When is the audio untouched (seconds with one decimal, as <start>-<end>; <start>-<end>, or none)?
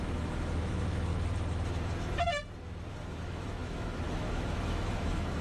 1.1-3.0